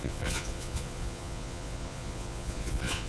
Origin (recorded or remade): remade